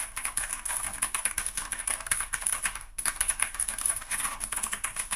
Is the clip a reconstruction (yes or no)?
yes